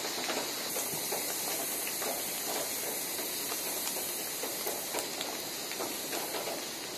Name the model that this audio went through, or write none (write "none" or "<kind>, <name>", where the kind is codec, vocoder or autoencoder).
none